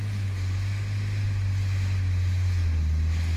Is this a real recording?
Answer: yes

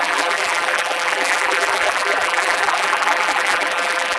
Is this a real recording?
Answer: no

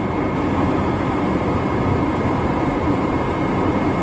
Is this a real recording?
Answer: no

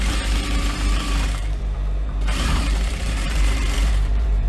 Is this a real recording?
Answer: no